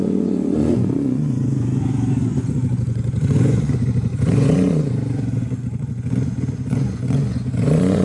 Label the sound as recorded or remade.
remade